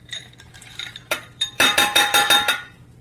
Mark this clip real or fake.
fake